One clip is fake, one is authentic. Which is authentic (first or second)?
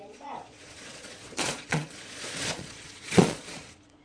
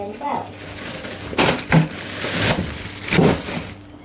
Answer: second